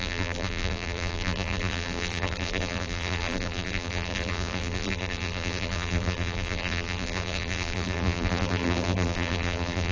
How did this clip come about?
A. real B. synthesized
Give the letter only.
B